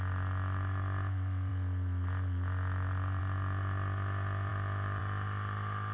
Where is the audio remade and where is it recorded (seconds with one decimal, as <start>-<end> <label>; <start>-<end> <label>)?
0.0-5.9 recorded